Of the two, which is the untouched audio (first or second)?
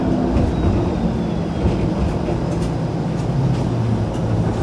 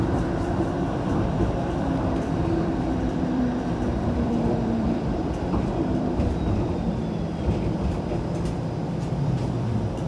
first